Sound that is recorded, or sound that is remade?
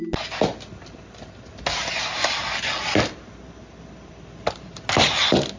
recorded